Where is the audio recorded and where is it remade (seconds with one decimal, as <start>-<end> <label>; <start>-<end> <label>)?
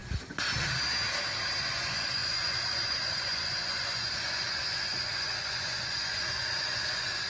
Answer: 0.0-1.6 recorded; 1.6-7.3 remade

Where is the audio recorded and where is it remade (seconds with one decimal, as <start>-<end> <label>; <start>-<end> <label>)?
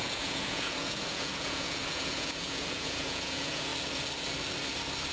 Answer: 0.0-3.7 remade; 3.7-5.1 recorded